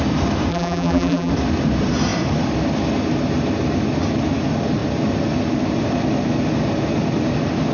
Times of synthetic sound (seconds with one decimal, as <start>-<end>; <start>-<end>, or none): 0.5-1.3